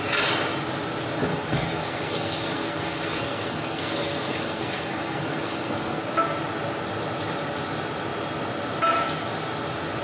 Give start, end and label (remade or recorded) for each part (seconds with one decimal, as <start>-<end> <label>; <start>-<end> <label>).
0.0-1.3 recorded; 1.3-6.0 remade; 6.0-10.0 recorded